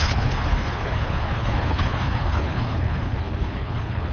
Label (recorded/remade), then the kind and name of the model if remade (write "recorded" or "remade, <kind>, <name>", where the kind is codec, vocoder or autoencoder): remade, codec, HILCodec